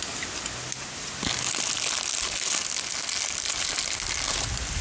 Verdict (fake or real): real